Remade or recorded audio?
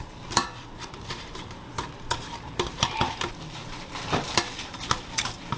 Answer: remade